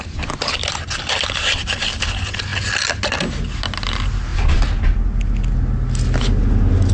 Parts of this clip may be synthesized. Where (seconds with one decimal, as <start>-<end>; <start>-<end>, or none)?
none